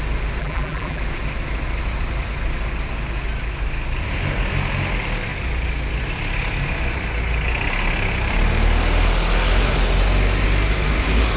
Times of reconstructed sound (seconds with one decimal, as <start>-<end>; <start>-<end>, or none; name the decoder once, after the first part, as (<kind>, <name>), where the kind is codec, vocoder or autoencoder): 0.4-1.0 (vocoder, BigVGAN v2)